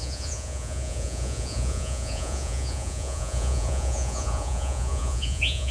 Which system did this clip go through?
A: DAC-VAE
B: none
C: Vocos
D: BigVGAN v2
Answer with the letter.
C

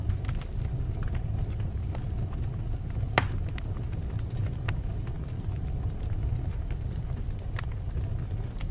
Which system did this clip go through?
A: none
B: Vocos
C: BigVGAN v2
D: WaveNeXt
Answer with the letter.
A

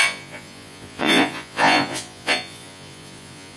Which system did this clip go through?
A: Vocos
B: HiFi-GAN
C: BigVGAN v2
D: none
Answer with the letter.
A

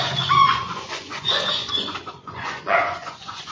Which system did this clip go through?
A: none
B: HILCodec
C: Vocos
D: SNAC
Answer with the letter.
C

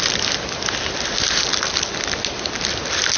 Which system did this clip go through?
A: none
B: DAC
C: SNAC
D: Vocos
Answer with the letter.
A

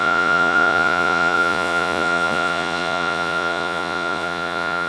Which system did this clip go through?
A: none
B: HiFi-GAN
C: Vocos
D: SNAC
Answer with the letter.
C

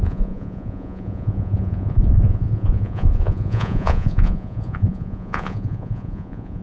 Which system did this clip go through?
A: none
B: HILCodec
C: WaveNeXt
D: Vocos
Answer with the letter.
D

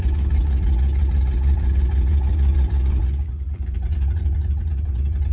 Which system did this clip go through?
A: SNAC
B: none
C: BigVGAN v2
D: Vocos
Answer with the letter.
D